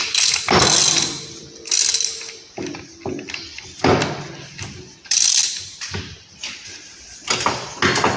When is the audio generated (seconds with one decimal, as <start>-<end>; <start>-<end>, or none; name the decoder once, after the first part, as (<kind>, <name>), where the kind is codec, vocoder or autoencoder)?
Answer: none